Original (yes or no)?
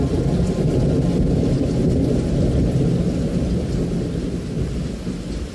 yes